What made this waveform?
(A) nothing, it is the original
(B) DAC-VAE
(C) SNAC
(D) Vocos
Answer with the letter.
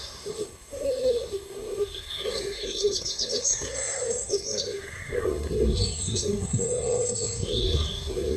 C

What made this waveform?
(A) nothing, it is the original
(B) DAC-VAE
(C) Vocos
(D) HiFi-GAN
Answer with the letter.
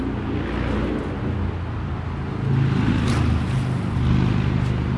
A